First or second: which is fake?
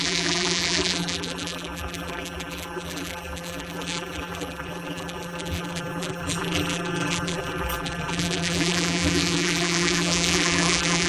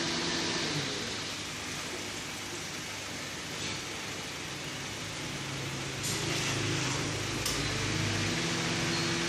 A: first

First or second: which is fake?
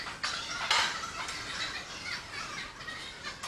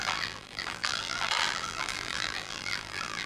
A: second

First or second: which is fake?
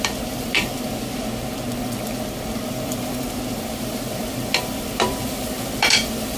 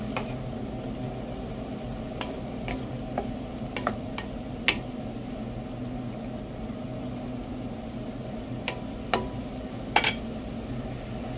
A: first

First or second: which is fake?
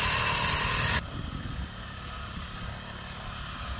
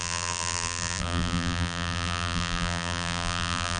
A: second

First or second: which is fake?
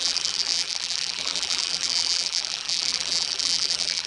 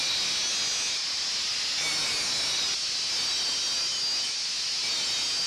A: first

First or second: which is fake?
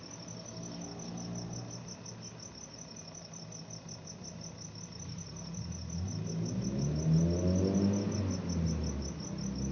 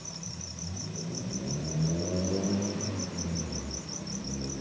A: second